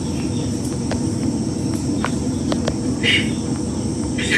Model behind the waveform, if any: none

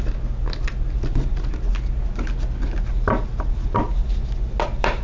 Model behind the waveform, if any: none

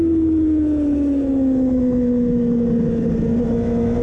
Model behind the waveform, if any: none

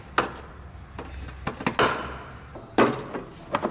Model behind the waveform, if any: none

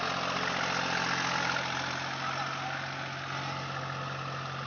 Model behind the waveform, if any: none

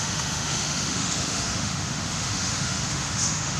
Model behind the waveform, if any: autoencoder, DAC-VAE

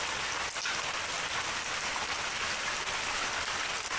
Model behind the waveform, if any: none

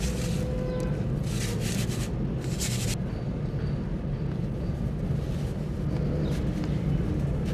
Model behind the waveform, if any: none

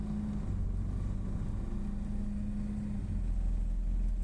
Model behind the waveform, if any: none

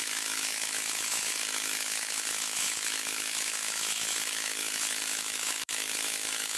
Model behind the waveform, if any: autoencoder, DAC-VAE